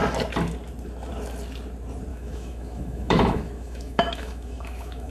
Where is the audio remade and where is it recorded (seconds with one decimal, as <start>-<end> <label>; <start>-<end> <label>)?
0.0-2.1 recorded; 2.1-5.1 remade